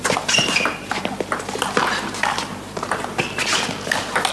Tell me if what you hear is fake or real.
real